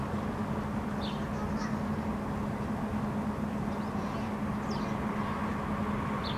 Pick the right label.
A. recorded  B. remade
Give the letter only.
A